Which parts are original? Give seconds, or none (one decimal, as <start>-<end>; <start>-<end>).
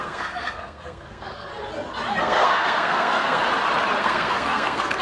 1.5-2.2; 3.4-4.0